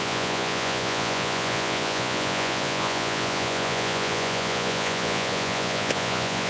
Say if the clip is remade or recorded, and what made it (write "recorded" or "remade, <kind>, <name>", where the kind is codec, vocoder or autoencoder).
remade, vocoder, Vocos